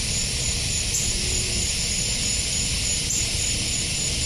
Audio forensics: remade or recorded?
recorded